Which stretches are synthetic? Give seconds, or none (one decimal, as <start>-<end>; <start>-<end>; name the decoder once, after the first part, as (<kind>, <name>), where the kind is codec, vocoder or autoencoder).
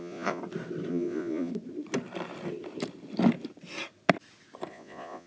0.0-0.4 (vocoder, Vocos); 0.9-1.5; 4.7-5.3